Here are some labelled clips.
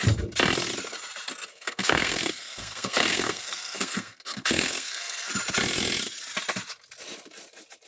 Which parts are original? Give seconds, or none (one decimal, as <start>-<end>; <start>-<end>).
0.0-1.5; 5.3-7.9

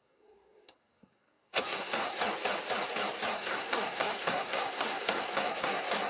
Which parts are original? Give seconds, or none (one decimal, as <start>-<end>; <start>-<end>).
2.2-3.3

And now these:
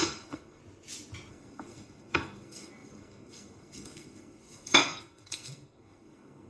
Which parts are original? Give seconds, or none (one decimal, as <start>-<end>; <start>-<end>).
0.6-1.3

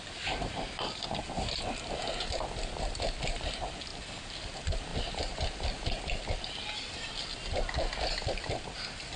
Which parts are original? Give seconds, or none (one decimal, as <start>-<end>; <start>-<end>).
0.0-9.2

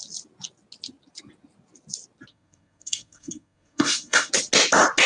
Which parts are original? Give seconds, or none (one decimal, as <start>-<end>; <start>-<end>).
0.0-2.3; 4.3-5.1

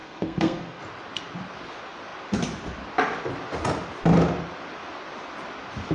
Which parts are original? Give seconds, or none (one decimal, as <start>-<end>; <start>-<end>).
0.8-5.9